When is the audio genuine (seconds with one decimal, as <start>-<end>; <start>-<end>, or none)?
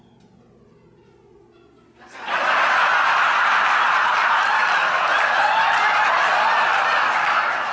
0.0-7.7